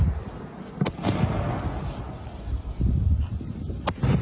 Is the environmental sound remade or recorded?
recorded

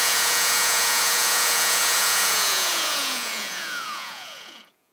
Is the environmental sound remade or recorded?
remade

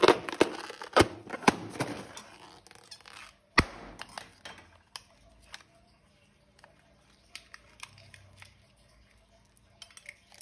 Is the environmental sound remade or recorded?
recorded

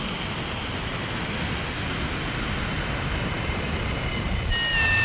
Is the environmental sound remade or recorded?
recorded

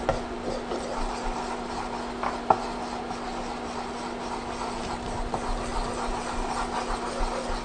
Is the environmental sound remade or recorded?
recorded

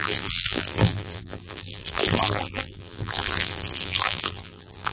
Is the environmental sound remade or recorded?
remade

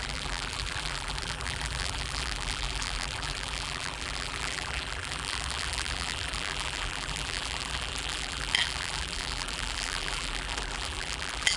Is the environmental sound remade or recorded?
remade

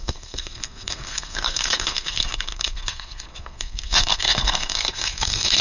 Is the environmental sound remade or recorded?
remade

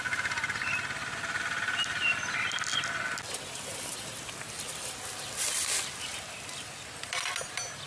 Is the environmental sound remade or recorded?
recorded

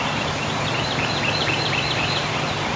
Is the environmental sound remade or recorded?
remade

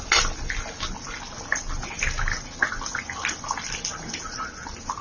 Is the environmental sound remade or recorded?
recorded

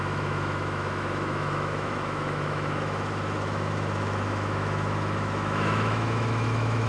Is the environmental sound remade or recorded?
remade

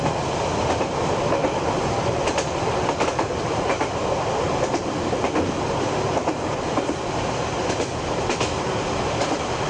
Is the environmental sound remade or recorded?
recorded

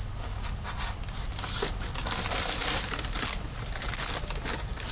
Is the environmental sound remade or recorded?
recorded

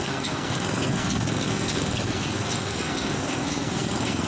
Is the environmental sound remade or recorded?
remade